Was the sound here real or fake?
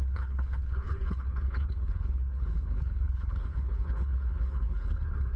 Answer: fake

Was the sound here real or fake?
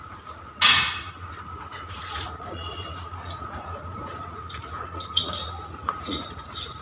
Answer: fake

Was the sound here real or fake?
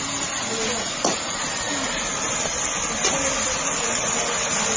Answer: real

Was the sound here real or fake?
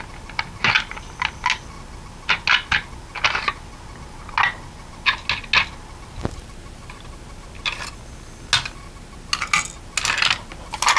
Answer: real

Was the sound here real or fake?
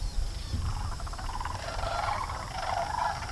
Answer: fake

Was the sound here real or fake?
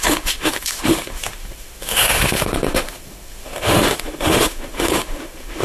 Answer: fake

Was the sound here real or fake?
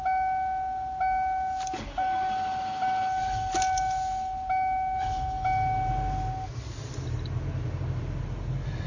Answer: real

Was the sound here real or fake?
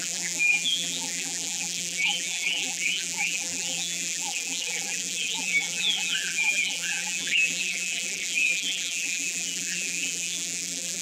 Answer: fake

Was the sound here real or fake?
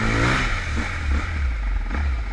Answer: real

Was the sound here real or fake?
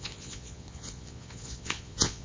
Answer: fake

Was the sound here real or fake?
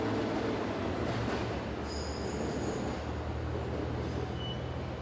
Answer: real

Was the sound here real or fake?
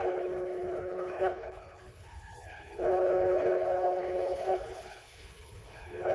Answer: fake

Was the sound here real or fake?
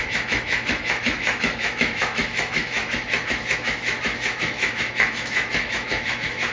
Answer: fake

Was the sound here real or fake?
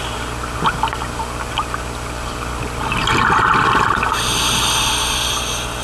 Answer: real